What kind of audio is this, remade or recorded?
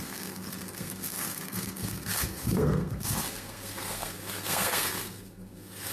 remade